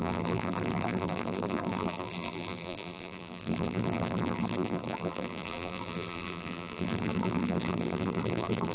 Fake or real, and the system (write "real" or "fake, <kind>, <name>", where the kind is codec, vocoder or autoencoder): fake, vocoder, BigVGAN v2